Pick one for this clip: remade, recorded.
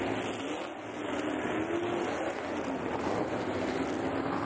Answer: recorded